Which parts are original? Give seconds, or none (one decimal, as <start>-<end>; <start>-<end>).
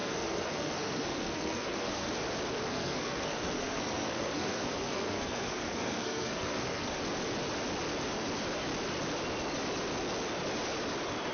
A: 2.1-2.7; 7.0-11.3